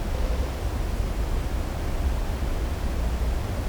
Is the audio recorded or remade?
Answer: remade